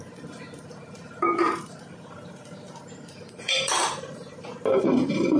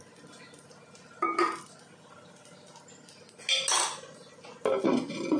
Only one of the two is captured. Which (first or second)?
second